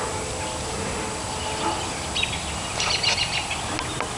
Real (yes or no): yes